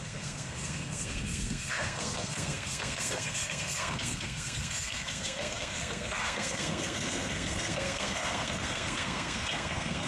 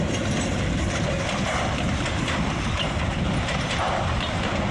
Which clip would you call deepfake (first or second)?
first